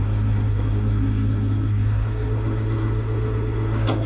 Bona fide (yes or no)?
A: no